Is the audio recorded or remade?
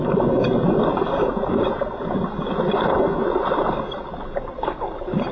recorded